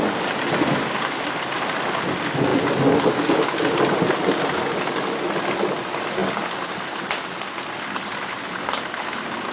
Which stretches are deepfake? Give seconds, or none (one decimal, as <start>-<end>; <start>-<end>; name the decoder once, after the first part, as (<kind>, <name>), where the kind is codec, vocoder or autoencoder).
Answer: none